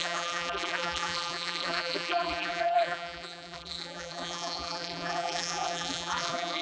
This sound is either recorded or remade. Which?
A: remade